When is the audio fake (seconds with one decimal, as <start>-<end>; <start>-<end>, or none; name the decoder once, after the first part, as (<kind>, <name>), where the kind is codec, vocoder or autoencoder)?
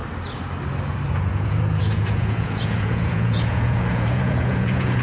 1.1-5.0 (vocoder, Vocos)